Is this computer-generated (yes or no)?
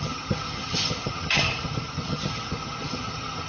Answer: yes